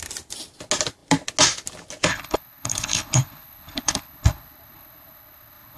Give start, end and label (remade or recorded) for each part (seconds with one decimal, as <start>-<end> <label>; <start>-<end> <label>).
0.0-2.1 recorded; 2.1-5.8 remade

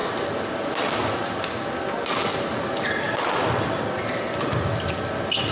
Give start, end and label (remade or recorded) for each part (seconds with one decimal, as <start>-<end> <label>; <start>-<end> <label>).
0.0-5.5 recorded

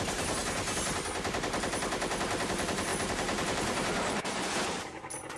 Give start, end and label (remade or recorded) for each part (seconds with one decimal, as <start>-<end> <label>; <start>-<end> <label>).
0.0-0.4 remade; 0.4-2.4 recorded; 2.4-5.4 remade

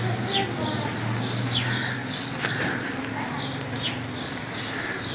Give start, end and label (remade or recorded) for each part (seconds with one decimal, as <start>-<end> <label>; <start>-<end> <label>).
0.0-5.1 recorded

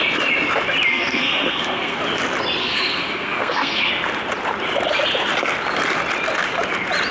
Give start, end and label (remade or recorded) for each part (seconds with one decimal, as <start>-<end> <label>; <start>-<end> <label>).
0.0-0.9 recorded; 0.9-2.0 remade; 2.0-2.6 recorded; 2.6-3.9 remade; 3.9-7.1 recorded

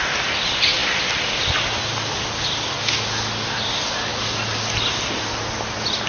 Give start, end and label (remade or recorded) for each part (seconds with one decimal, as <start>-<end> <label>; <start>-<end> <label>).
0.0-6.1 recorded